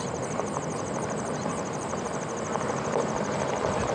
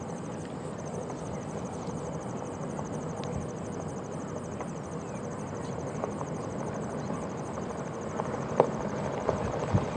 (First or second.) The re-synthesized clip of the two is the second